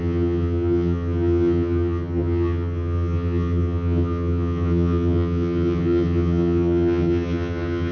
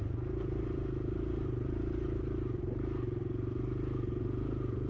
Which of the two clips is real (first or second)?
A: second